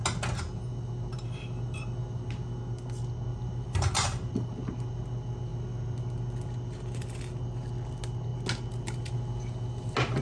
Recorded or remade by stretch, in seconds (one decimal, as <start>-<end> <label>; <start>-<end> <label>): 0.0-3.3 recorded; 3.3-5.0 remade; 5.0-10.2 recorded

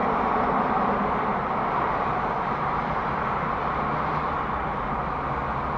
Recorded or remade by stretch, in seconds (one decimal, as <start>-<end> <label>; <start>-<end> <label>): 0.0-1.3 recorded; 1.3-4.8 remade; 4.8-5.8 recorded

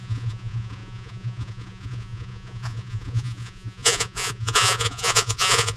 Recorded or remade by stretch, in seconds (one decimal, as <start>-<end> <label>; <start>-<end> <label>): 0.0-5.8 remade

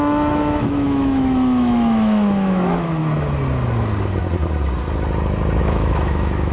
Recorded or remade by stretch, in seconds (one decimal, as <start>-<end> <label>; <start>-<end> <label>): 0.0-3.0 remade; 3.0-5.6 recorded; 5.6-6.5 remade